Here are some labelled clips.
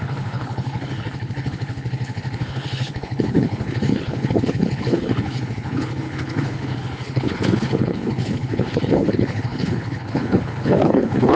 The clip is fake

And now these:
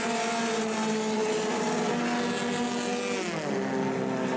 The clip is real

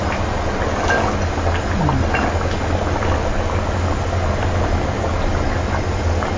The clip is real